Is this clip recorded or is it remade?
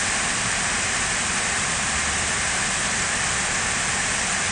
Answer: recorded